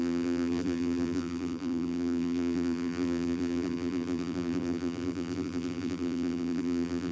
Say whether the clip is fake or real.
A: fake